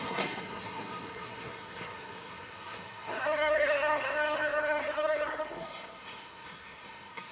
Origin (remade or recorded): remade